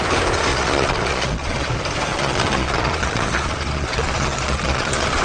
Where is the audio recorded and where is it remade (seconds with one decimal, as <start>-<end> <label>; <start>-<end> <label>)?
0.0-0.5 recorded; 0.5-1.7 remade; 1.7-2.1 recorded; 2.1-5.2 remade